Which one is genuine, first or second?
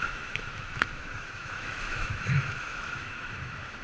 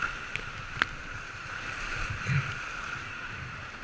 second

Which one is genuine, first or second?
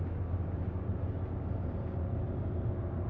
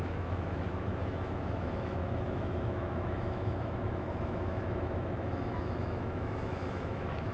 first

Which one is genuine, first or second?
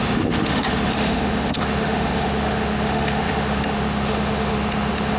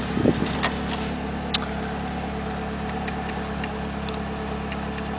second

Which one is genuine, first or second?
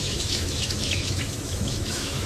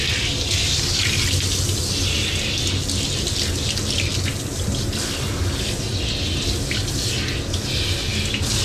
second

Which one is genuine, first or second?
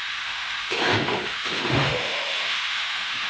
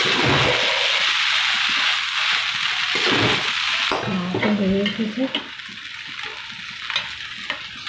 second